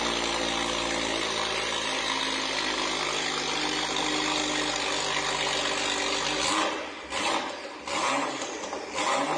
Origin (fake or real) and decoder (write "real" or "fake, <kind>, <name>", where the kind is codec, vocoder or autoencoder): real